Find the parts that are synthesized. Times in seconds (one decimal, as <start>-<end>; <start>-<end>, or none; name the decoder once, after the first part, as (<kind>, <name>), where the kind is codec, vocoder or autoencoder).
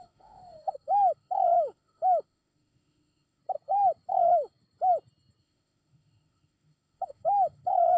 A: 0.0-3.4 (autoencoder, DAC-VAE); 4.1-4.5; 5.4-8.0